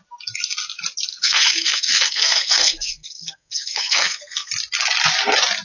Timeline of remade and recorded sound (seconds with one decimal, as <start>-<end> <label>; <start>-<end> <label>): 0.0-1.1 recorded; 1.1-4.5 remade; 4.5-5.6 recorded